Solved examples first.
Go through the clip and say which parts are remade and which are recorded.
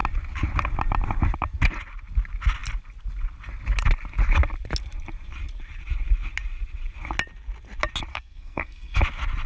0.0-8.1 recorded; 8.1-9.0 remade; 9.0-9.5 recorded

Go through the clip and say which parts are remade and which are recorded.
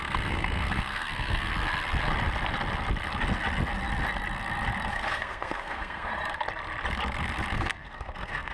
0.0-1.5 remade; 1.5-4.9 recorded; 4.9-6.1 remade; 6.1-7.5 recorded; 7.5-8.5 remade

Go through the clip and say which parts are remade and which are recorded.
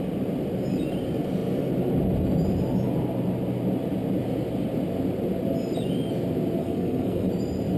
0.0-6.6 recorded; 6.6-7.3 remade; 7.3-7.8 recorded